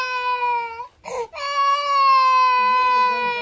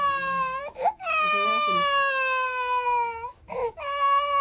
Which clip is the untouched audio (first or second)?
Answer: first